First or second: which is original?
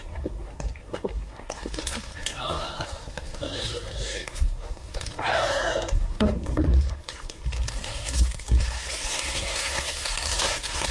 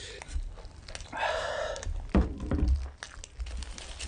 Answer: second